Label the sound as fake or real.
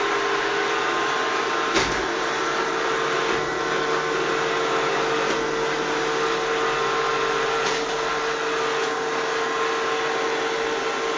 real